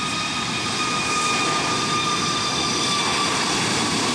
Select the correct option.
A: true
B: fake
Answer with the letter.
A